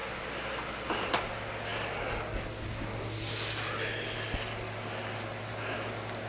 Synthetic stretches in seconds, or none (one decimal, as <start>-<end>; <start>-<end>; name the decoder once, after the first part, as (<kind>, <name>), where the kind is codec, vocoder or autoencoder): none